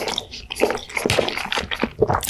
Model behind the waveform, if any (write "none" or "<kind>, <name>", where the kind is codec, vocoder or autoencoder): none